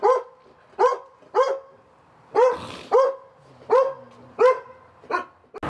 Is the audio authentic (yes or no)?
yes